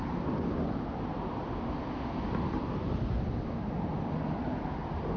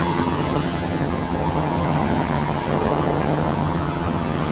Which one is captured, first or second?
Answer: first